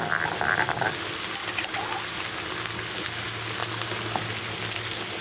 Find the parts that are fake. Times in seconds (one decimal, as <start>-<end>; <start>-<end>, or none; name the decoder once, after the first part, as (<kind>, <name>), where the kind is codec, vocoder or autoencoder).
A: none